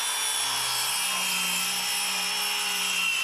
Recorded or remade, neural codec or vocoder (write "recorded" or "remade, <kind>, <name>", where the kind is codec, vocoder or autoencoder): recorded